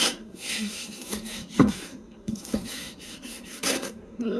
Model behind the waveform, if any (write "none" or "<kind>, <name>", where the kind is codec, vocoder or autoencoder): codec, SNAC